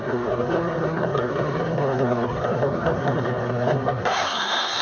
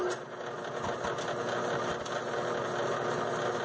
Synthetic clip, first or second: first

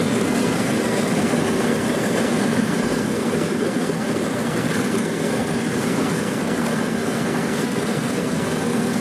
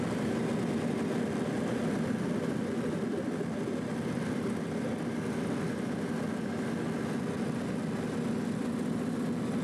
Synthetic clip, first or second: first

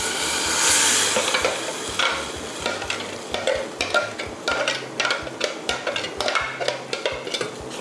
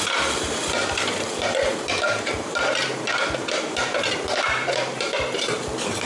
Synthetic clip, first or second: second